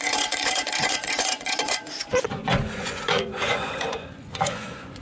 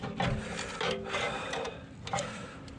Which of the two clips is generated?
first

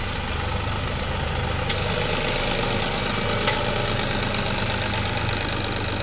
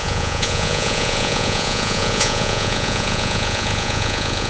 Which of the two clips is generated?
second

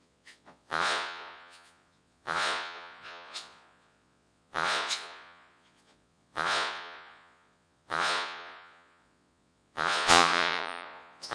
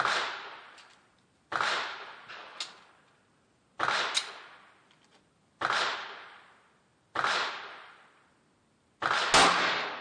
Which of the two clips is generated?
first